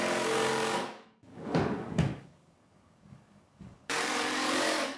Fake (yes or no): yes